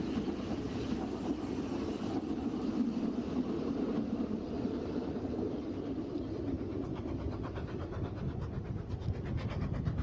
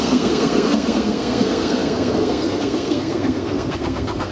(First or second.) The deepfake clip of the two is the second